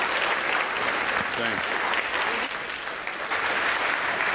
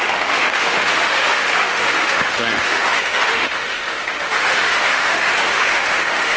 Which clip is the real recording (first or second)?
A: first